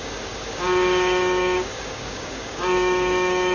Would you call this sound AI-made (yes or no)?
yes